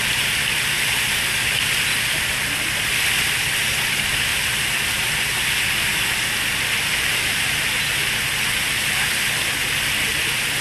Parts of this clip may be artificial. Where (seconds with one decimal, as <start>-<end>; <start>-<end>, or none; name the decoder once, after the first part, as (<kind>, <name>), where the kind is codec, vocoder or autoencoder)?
none